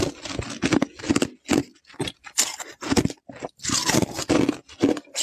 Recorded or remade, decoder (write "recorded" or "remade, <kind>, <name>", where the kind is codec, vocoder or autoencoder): recorded